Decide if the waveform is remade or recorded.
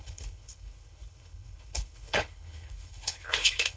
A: remade